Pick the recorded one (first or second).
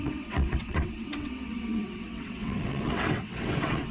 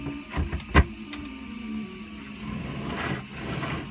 second